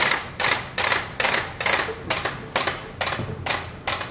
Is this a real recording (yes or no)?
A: yes